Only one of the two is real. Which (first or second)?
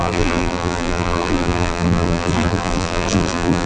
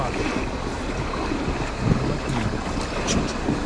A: second